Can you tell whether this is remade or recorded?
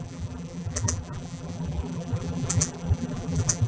remade